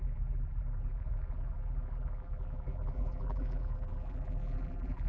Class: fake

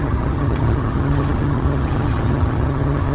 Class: fake